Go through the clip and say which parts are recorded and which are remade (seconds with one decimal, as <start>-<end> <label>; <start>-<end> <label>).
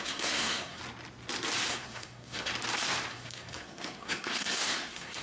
0.0-0.8 remade; 0.8-1.7 recorded; 1.7-2.5 remade; 2.5-3.1 recorded; 3.1-5.2 remade